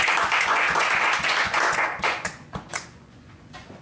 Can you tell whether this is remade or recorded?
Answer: remade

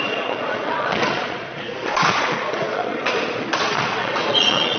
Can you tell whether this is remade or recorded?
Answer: remade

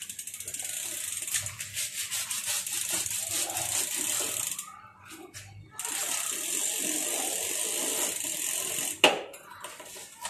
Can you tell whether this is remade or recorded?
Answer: recorded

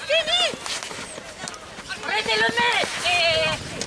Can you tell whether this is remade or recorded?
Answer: recorded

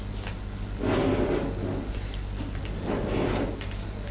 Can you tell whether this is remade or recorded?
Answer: recorded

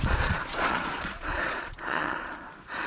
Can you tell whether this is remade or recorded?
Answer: remade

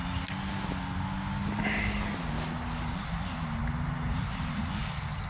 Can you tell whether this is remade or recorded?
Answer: recorded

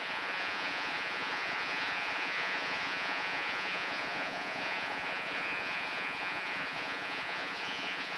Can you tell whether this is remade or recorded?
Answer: remade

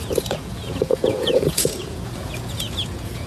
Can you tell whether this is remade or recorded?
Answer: remade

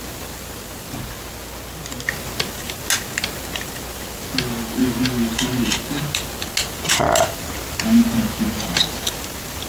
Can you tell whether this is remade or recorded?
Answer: recorded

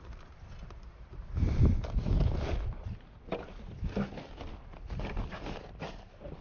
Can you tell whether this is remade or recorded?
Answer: recorded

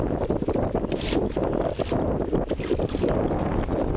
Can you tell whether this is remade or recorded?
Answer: recorded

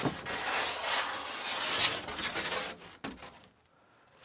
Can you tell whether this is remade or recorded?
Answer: recorded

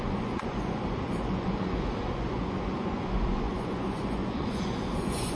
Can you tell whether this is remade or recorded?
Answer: remade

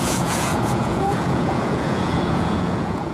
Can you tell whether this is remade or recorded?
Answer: remade